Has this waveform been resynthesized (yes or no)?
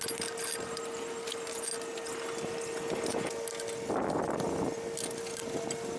no